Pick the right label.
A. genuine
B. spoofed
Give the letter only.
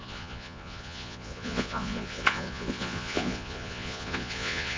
B